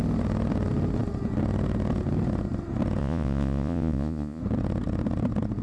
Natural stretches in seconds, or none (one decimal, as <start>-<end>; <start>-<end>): 0.0-3.0; 4.4-5.6

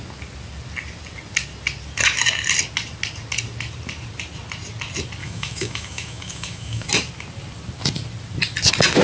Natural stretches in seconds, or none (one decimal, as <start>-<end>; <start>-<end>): 0.0-5.2; 6.9-9.0